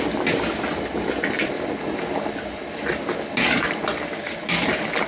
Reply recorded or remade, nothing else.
recorded